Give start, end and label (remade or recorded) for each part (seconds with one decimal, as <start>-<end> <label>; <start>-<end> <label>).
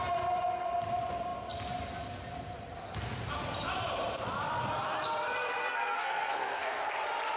0.0-5.6 recorded; 5.6-6.8 remade; 6.8-7.4 recorded